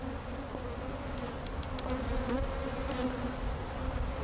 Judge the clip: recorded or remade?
recorded